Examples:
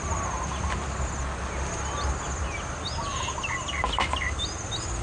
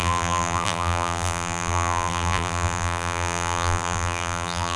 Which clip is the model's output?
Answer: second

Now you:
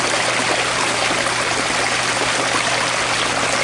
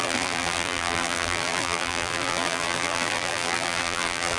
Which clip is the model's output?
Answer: second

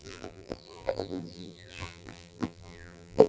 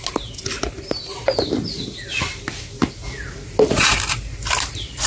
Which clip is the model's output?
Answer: first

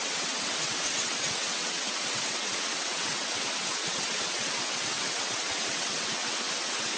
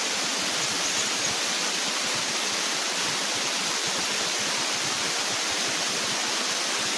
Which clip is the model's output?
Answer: first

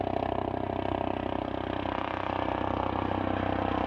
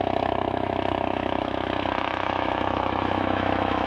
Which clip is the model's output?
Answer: second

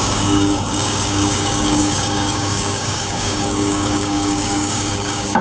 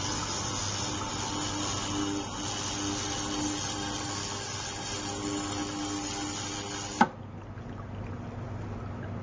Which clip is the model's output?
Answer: first